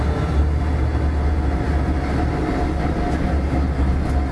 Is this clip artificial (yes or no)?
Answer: no